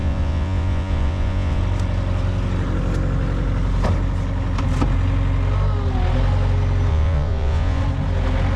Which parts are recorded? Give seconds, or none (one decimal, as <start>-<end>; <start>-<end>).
1.6-6.9; 7.8-8.6